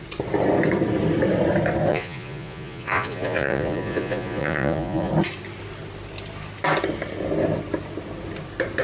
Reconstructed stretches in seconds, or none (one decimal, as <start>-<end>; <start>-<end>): 1.9-5.1